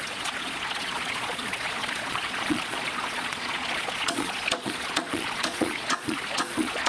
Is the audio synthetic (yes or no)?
yes